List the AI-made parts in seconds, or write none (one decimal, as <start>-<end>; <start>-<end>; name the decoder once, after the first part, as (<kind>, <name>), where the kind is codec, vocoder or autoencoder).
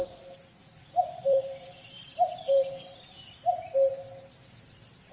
0.6-3.7 (vocoder, BigVGAN v2)